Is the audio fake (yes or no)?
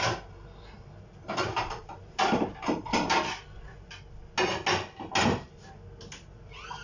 no